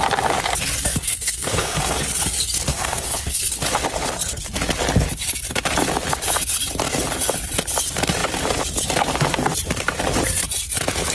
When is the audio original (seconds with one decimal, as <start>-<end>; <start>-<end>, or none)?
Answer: 0.0-0.9; 2.0-2.7; 3.5-11.1